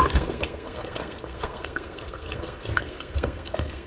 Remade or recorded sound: remade